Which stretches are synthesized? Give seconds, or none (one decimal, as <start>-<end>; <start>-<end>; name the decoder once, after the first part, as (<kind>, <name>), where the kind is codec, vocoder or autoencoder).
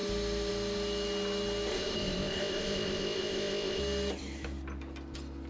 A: 1.7-3.8 (codec, ZipCodec)